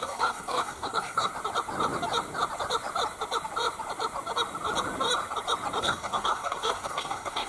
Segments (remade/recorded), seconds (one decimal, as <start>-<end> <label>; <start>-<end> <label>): 0.0-1.3 remade; 1.3-5.8 recorded; 5.8-7.5 remade